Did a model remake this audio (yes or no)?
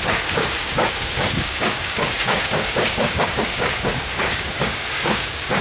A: yes